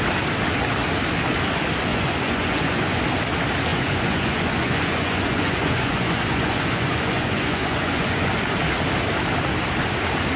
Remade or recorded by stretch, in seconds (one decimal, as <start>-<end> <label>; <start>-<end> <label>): 0.0-1.9 recorded; 1.9-3.0 remade; 3.0-3.7 recorded; 3.7-8.5 remade; 8.5-10.4 recorded